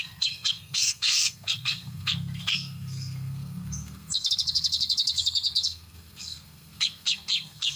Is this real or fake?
fake